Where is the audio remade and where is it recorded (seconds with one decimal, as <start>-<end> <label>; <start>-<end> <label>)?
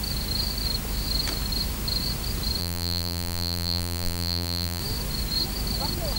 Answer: 0.0-2.6 recorded; 2.6-4.8 remade; 4.8-6.2 recorded